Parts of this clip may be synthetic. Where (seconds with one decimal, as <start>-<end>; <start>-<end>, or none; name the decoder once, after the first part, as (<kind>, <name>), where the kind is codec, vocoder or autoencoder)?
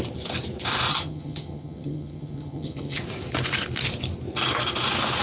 0.9-3.0 (vocoder, HiFi-GAN)